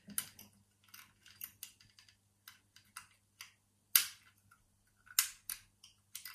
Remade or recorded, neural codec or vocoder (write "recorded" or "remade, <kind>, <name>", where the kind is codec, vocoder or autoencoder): recorded